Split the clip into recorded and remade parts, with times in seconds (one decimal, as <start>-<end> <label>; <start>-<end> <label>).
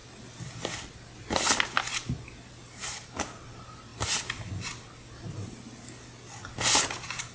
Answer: 0.0-7.3 recorded